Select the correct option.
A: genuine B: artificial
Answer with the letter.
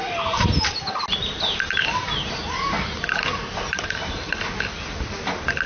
A